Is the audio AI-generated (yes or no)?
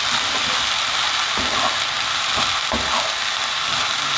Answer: no